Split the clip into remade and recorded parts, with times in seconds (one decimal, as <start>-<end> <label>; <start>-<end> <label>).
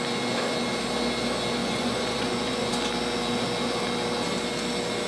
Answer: 0.0-1.6 recorded; 1.6-2.7 remade; 2.7-5.1 recorded